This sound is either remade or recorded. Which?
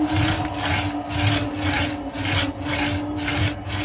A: recorded